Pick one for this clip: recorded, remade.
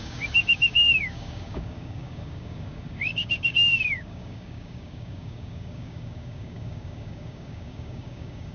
remade